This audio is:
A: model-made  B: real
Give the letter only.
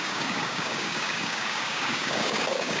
A